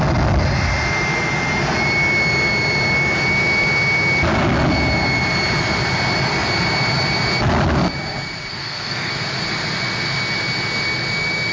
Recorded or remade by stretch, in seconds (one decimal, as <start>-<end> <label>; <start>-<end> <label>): 0.0-8.5 recorded; 8.5-9.1 remade; 9.1-11.5 recorded